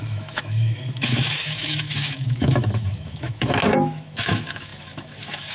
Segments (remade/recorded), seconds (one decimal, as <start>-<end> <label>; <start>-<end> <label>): 0.0-5.5 remade